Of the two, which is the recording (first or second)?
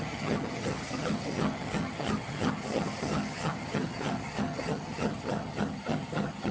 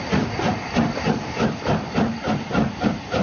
second